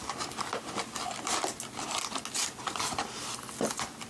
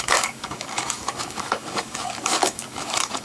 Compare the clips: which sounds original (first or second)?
first